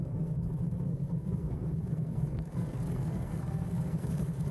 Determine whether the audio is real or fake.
fake